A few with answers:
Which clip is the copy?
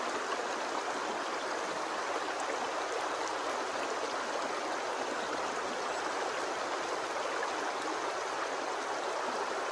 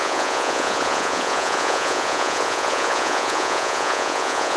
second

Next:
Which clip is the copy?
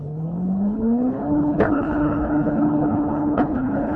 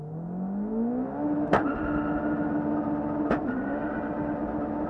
first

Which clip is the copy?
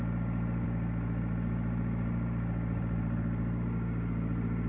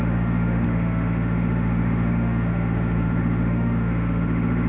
second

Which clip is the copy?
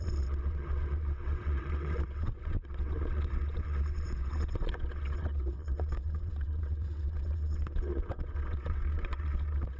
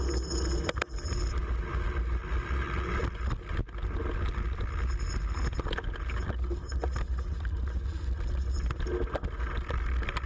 first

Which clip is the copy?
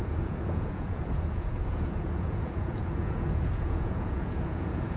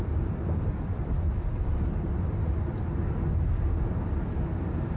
first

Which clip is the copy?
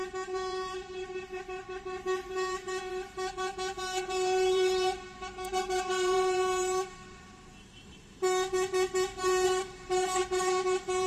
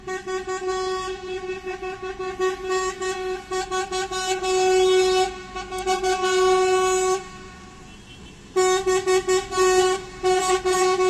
first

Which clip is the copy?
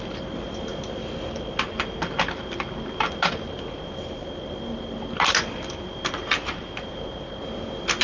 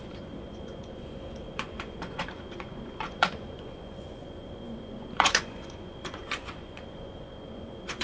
second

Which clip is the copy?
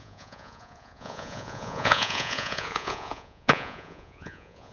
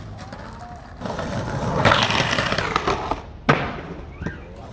first